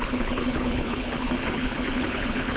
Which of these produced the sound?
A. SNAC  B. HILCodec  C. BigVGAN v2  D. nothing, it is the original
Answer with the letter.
B